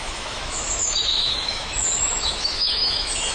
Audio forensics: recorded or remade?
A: remade